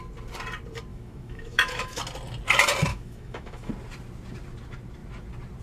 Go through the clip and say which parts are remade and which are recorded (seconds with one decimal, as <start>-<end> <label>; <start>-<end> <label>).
0.0-0.9 recorded; 0.9-2.0 remade; 2.0-2.9 recorded; 2.9-3.7 remade; 3.7-5.6 recorded